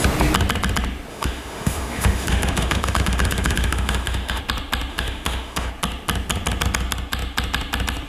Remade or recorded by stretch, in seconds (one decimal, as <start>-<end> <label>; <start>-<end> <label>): 0.0-1.1 recorded; 1.1-4.4 remade; 4.4-4.9 recorded; 4.9-5.7 remade; 5.7-8.1 recorded